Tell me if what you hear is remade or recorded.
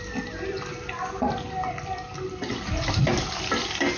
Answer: recorded